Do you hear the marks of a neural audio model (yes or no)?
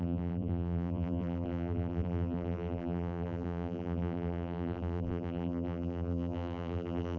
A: yes